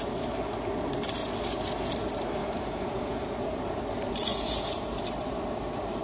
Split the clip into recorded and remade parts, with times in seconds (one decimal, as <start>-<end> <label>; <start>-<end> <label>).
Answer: 0.0-2.4 recorded; 2.4-3.8 remade; 3.8-4.3 recorded; 4.3-5.0 remade; 5.0-6.0 recorded